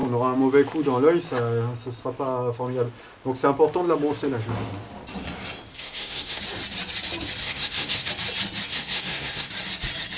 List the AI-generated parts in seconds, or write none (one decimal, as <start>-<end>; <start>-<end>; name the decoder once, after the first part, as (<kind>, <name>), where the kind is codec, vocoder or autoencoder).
5.7-6.4 (codec, SNAC); 7.4-8.1; 8.7-9.5